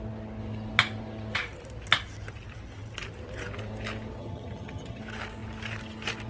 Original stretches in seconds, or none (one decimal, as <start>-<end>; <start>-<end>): 0.0-4.2; 5.0-6.3